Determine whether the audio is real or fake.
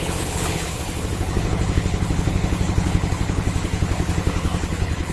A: fake